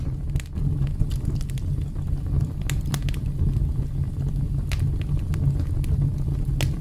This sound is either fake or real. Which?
real